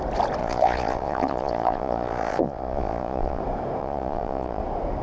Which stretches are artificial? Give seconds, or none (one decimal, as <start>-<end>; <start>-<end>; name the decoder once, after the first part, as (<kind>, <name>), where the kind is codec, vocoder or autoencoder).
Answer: 0.4-3.4 (vocoder, Vocos); 3.8-4.6